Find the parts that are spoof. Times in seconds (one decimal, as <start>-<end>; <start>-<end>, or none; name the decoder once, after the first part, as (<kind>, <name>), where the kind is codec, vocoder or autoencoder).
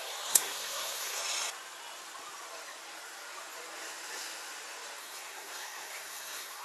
0.0-1.2 (codec, SNAC); 5.0-6.6